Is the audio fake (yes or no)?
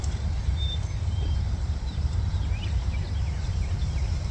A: yes